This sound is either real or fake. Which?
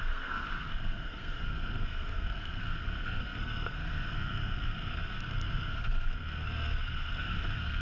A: fake